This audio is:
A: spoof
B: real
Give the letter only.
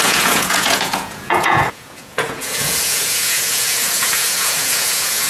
A